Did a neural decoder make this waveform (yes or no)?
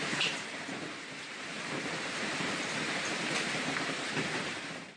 yes